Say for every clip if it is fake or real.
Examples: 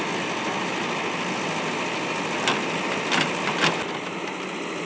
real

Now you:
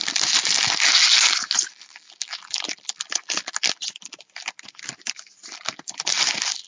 real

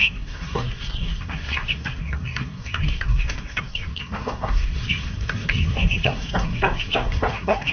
fake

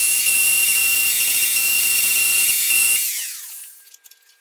fake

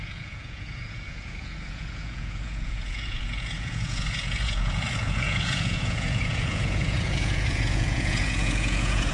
fake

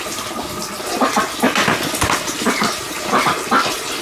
real